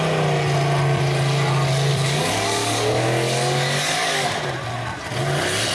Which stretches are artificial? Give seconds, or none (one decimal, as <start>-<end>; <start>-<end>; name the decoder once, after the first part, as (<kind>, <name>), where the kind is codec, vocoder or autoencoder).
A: 1.9-4.5 (codec, DAC)